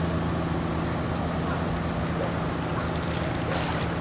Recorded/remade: recorded